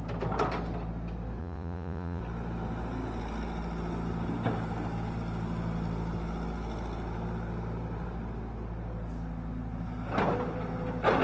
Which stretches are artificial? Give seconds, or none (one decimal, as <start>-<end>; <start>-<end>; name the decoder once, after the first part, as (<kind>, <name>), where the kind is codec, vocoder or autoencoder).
1.4-2.2 (vocoder, Vocos)